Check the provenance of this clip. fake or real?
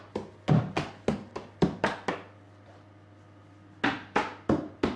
real